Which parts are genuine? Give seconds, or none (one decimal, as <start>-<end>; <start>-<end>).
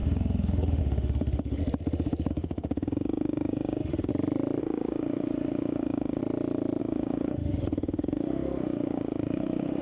1.6-2.3; 4.1-4.6; 6.2-6.8